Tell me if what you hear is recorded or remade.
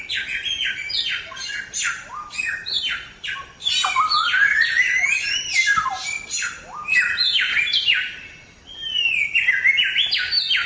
recorded